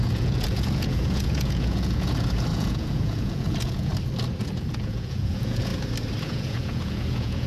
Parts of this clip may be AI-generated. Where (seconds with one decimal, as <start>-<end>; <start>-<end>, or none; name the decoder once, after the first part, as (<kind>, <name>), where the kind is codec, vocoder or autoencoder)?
0.0-3.9 (vocoder, Vocos); 4.4-5.7; 6.2-7.5